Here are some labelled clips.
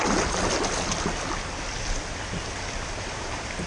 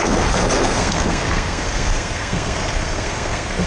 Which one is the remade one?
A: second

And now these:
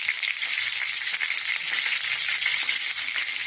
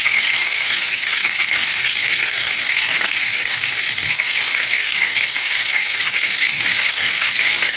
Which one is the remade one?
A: second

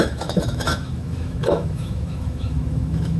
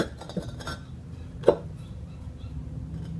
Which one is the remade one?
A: first